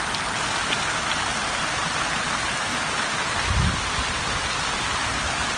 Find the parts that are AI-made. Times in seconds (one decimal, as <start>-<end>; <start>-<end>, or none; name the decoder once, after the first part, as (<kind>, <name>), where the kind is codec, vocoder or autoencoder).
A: 0.0-1.3 (vocoder, BigVGAN v2); 2.3-2.7; 5.0-5.6